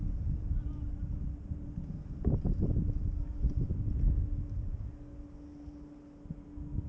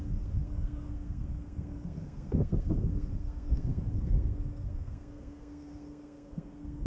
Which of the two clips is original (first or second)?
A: first